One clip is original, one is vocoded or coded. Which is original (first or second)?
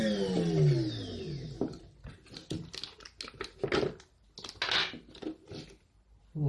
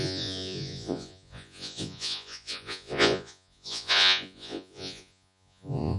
first